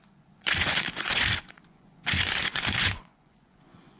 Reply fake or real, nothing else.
fake